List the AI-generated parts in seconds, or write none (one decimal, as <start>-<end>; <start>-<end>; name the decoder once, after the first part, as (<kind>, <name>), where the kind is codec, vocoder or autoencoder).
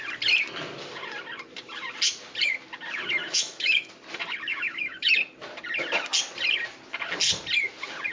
3.2-3.9 (autoencoder, DAC-VAE); 4.5-5.1